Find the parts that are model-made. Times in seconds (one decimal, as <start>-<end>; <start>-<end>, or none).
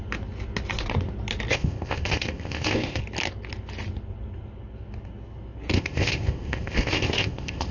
1.5-3.0; 5.7-7.7